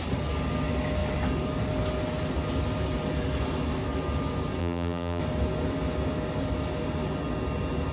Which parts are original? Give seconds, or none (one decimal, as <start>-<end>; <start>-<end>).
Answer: 0.0-4.6; 5.2-7.9